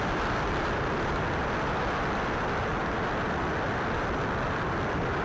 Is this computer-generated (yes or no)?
no